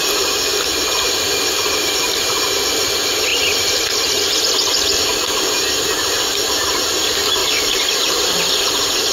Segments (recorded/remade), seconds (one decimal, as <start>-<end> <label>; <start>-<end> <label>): 0.0-3.3 recorded; 3.3-4.4 remade; 4.4-7.4 recorded; 7.4-8.4 remade; 8.4-9.1 recorded